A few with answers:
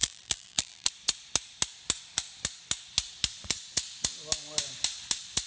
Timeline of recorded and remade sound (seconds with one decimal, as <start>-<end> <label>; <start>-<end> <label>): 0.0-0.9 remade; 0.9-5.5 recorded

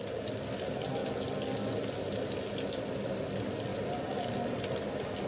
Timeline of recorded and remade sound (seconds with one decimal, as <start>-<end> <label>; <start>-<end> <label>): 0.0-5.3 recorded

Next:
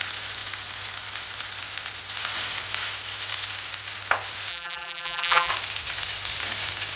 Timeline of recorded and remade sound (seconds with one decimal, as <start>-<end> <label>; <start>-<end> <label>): 0.0-4.5 recorded; 4.5-5.5 remade; 5.5-7.0 recorded

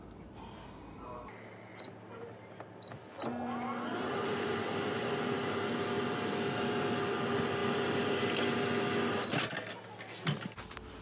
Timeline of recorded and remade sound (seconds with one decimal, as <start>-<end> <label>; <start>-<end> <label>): 0.0-3.9 recorded; 3.9-5.7 remade; 5.7-11.0 recorded

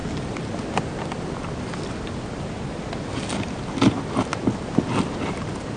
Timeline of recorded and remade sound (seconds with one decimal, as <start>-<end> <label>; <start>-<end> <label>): 0.0-0.6 remade; 0.6-5.8 recorded